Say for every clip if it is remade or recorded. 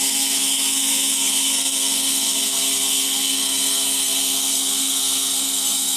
remade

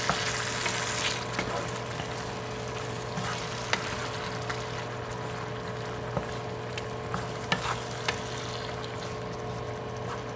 recorded